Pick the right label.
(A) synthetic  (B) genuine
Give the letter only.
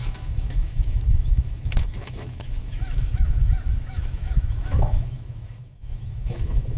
A